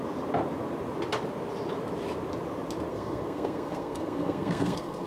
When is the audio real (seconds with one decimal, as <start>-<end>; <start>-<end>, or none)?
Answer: 0.0-2.9